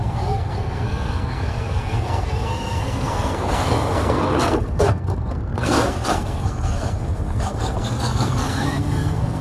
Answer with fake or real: fake